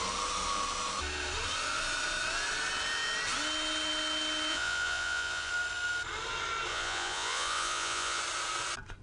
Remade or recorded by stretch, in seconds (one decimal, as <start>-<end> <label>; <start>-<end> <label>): 0.0-4.5 recorded; 4.5-5.5 remade; 5.5-6.7 recorded; 6.7-8.2 remade; 8.2-9.0 recorded